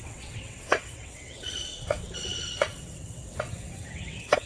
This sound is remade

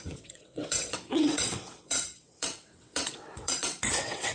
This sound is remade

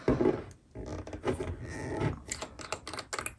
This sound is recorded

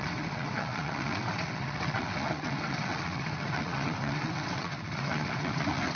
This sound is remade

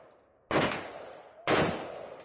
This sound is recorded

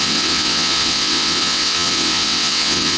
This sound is remade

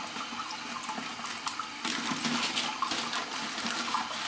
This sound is recorded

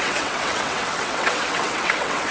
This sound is remade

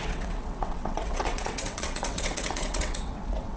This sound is remade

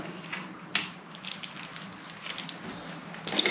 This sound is recorded